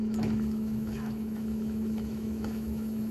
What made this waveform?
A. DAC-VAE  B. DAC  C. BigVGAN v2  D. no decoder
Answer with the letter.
A